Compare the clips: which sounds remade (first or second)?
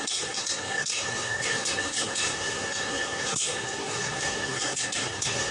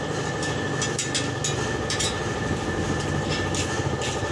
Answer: first